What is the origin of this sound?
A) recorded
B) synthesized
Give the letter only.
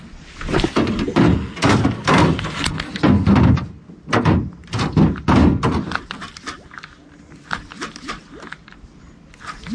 A